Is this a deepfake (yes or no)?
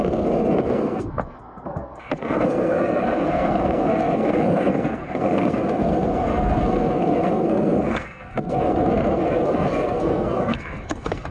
yes